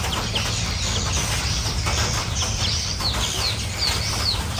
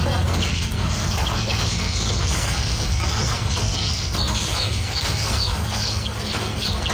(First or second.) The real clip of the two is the first